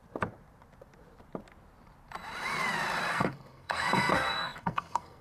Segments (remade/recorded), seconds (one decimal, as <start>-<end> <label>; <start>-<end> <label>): 0.0-3.1 recorded; 3.1-5.2 remade